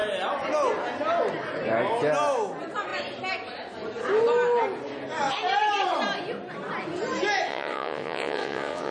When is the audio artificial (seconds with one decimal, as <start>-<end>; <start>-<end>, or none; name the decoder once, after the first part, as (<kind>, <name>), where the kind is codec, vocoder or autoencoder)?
7.5-8.9 (vocoder, WaveNeXt)